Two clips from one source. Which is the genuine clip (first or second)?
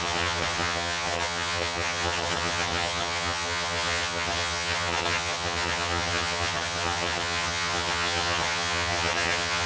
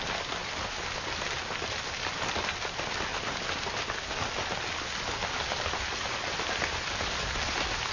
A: second